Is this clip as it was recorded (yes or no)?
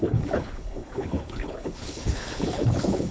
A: no